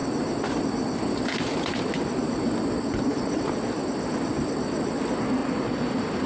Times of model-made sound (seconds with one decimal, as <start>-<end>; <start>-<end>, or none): none

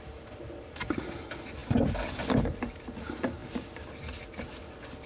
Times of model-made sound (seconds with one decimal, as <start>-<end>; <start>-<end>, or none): none

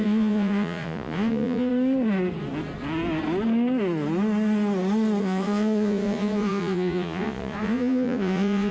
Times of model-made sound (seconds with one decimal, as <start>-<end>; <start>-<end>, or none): 0.0-1.7; 5.2-8.7